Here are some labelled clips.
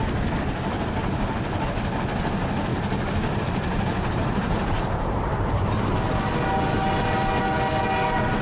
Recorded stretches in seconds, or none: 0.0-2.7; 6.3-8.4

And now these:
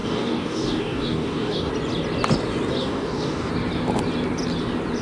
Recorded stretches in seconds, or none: 1.7-2.8; 3.5-5.0